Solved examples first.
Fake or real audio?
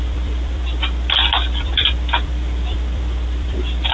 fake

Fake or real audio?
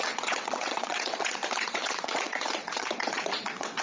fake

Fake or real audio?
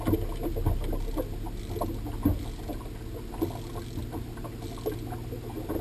real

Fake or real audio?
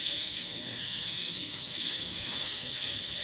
fake